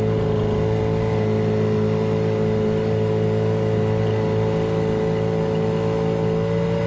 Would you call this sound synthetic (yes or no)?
no